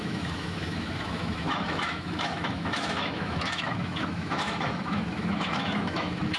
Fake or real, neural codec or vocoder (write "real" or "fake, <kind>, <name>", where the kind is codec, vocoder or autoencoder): fake, autoencoder, DAC-VAE